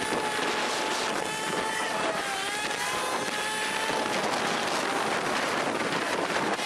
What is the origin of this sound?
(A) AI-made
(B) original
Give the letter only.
B